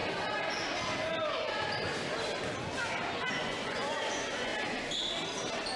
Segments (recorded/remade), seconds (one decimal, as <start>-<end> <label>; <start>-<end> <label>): 0.0-3.3 recorded; 3.3-4.5 remade; 4.5-5.8 recorded